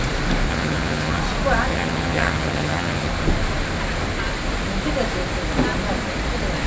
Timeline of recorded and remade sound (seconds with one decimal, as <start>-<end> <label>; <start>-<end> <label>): 0.0-0.5 recorded; 0.5-1.2 remade; 1.2-1.7 recorded; 1.7-3.1 remade; 3.1-6.7 recorded